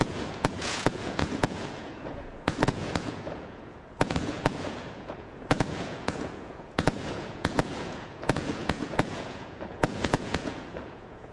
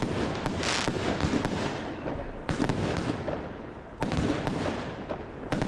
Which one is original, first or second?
second